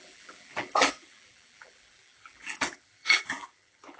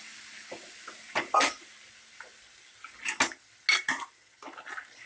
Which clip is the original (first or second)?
second